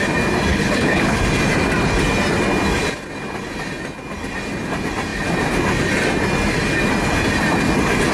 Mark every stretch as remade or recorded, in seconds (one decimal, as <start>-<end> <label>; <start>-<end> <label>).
0.0-0.5 recorded; 0.5-1.2 remade; 1.2-8.1 recorded